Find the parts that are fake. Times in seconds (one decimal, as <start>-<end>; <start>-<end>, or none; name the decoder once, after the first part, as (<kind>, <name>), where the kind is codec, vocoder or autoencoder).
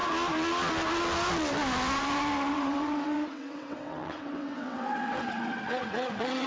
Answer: 2.5-6.5 (vocoder, WaveNeXt)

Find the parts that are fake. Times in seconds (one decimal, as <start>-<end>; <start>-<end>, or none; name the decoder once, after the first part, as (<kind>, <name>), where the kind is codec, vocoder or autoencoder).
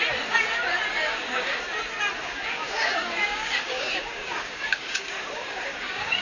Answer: 0.9-1.6 (codec, DAC); 2.2-6.2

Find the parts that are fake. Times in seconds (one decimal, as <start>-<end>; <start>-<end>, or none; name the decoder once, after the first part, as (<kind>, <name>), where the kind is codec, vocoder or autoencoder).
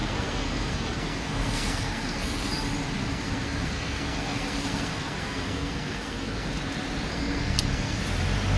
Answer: 0.0-2.5 (codec, SNAC); 3.0-6.5; 7.1-8.0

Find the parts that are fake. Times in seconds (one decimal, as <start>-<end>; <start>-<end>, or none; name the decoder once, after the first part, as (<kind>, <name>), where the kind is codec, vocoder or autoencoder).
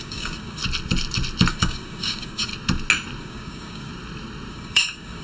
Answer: 0.0-0.6 (codec, DAC); 1.5-2.5; 3.2-3.9; 4.5-5.2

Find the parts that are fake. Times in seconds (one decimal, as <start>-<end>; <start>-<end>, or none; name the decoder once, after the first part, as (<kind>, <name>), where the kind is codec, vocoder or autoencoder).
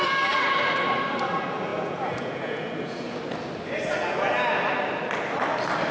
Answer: 1.7-3.2 (vocoder, Vocos)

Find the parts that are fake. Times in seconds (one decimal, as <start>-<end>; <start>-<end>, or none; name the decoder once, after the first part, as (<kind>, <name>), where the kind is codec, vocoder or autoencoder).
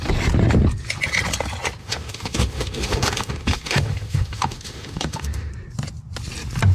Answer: 1.8-5.5 (autoencoder, DAC-VAE)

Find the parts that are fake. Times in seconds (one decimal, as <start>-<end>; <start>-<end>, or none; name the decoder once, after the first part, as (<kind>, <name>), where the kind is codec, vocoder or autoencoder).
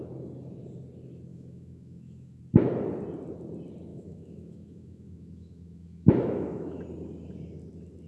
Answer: 1.3-2.4 (autoencoder, DAC-VAE); 3.9-6.8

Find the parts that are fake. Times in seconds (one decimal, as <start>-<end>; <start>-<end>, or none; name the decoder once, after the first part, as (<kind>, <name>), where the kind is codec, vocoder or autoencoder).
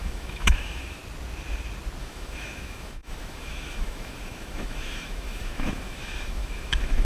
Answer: 0.0-1.0 (autoencoder, DAC-VAE); 2.0-7.0